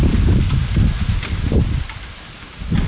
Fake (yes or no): no